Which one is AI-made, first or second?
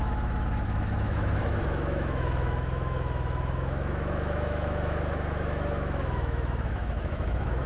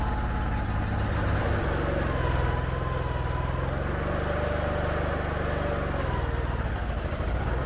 first